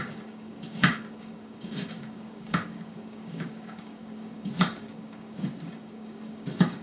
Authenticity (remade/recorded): remade